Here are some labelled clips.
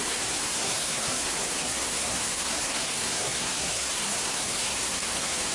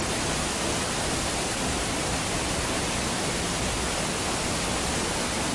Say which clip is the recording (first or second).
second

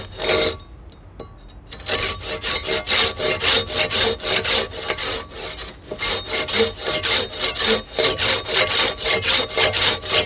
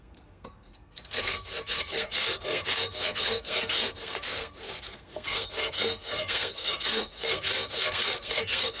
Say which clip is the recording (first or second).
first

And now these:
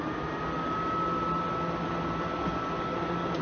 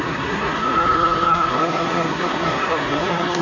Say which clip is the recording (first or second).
first